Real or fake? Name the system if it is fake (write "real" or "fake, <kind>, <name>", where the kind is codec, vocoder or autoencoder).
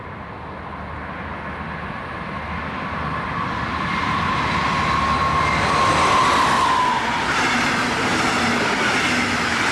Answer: real